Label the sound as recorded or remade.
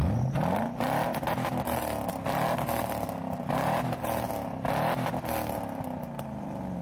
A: recorded